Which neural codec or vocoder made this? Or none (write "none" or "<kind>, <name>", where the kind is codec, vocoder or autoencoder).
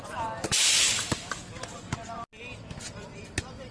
none